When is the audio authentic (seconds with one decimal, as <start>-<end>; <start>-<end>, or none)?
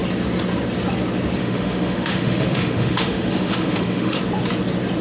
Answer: 0.0-1.4; 4.2-5.0